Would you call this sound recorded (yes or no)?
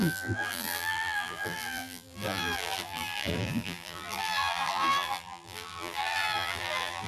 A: no